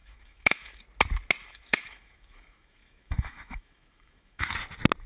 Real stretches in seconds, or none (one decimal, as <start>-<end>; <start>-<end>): 0.8-1.4; 4.5-5.1